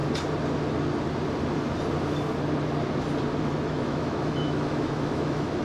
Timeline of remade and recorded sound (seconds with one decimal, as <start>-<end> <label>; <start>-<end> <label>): 0.0-3.4 recorded; 3.4-5.6 remade

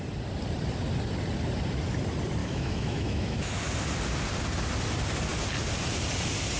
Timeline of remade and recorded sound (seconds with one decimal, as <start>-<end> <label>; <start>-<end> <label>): 0.0-2.4 recorded; 2.4-3.6 remade; 3.6-6.6 recorded

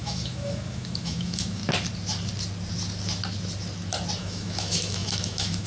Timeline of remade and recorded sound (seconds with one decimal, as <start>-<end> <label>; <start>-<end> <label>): 0.0-1.6 remade; 1.6-4.2 recorded; 4.2-5.7 remade

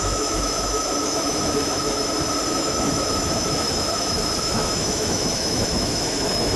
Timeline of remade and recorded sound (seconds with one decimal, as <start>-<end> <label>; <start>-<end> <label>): 0.0-2.0 remade; 2.0-2.5 recorded; 2.5-6.6 remade

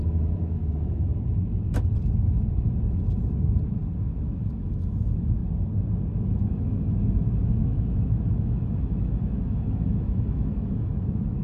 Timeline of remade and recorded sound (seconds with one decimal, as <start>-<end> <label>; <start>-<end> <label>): 0.0-1.1 remade; 1.1-4.1 recorded; 4.1-5.4 remade; 5.4-6.2 recorded; 6.2-11.4 remade

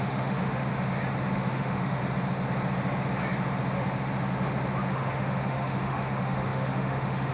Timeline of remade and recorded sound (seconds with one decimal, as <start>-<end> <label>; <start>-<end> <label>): 0.0-0.7 remade; 0.7-1.3 recorded; 1.3-2.0 remade; 2.0-4.9 recorded; 4.9-7.3 remade

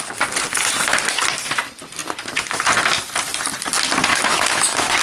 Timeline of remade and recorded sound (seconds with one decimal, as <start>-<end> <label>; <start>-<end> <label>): 0.0-4.1 recorded; 4.1-5.0 remade